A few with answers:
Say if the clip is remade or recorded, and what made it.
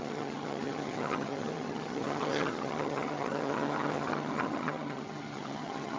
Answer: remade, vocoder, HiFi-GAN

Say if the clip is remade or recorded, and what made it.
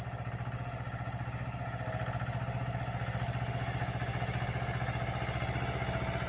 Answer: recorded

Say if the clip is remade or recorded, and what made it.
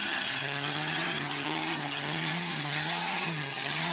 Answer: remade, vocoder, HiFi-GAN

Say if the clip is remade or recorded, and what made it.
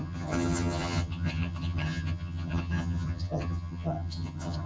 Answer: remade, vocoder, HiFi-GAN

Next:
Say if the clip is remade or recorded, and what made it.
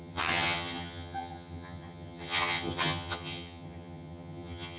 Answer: remade, vocoder, HiFi-GAN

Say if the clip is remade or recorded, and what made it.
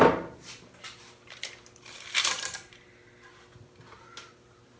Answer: recorded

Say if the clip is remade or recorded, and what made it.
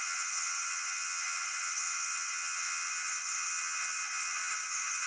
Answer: remade, vocoder, HiFi-GAN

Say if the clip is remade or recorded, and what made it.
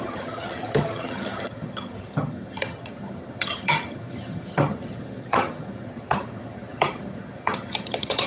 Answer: remade, vocoder, HiFi-GAN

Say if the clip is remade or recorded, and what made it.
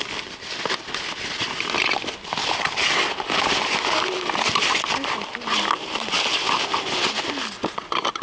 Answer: recorded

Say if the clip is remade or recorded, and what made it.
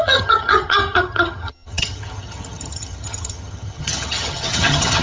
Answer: remade, vocoder, HiFi-GAN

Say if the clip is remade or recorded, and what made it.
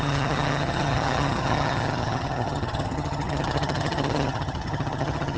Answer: remade, vocoder, HiFi-GAN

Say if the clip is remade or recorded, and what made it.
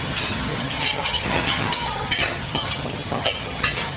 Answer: remade, vocoder, HiFi-GAN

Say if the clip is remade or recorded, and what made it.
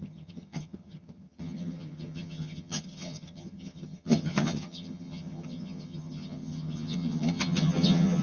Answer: remade, vocoder, HiFi-GAN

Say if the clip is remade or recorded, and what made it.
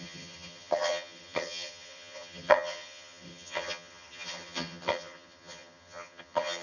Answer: remade, vocoder, HiFi-GAN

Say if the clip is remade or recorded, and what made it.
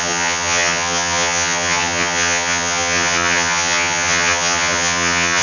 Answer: remade, vocoder, HiFi-GAN